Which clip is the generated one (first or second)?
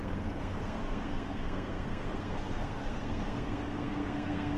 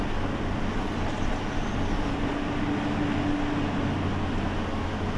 first